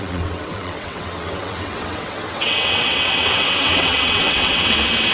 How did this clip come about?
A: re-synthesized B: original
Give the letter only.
A